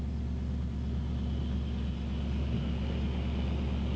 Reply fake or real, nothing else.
real